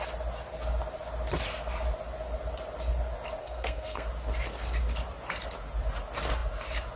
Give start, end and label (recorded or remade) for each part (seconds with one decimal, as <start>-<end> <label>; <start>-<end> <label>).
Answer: 0.0-3.4 recorded; 3.4-4.1 remade; 4.1-7.0 recorded